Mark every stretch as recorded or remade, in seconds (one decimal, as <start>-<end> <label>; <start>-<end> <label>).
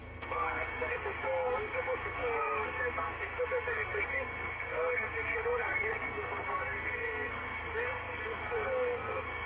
0.0-9.5 remade